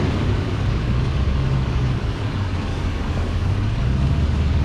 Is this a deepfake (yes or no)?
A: yes